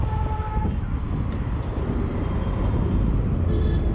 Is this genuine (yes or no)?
yes